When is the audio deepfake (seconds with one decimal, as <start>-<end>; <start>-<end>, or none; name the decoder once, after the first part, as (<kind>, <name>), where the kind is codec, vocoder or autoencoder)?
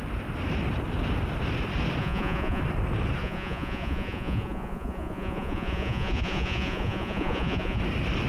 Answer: 2.0-2.6 (vocoder, Vocos); 3.2-7.8